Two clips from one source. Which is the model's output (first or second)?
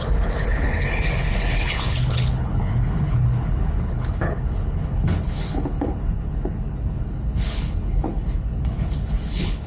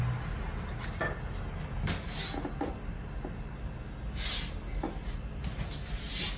first